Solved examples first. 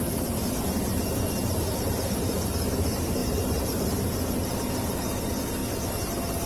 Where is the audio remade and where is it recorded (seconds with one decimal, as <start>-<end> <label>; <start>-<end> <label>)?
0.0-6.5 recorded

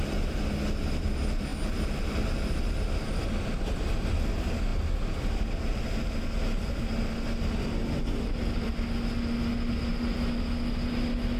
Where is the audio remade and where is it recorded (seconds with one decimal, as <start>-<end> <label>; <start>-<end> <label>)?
0.0-11.4 recorded

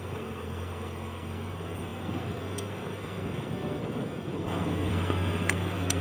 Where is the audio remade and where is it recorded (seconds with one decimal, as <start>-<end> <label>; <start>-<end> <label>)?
0.0-6.0 remade

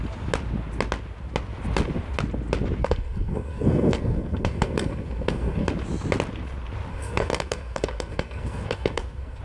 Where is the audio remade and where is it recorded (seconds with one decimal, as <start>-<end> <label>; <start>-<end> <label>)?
0.0-2.8 recorded; 2.8-5.7 remade; 5.7-6.9 recorded; 6.9-9.4 remade